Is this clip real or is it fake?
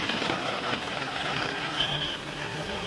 fake